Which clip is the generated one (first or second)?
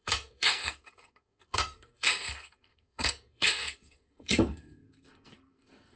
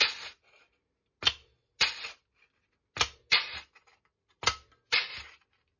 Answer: first